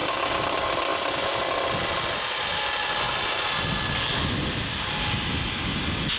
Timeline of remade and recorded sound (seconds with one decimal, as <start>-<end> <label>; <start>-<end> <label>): 0.0-6.2 recorded